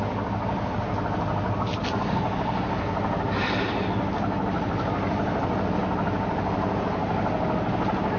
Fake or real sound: real